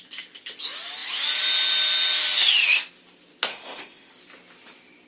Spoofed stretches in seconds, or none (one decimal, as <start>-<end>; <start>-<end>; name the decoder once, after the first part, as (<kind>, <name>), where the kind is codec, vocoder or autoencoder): 3.5-4.1 (codec, ZipCodec)